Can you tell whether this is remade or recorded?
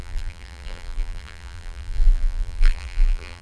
remade